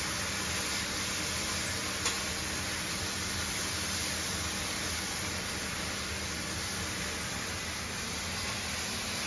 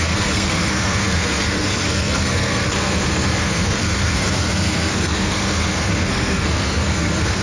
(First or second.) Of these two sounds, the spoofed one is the second